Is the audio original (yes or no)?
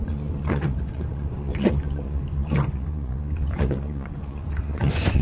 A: no